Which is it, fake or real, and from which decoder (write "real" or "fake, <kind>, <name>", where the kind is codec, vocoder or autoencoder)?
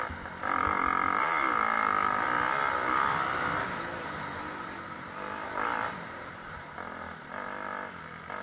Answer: real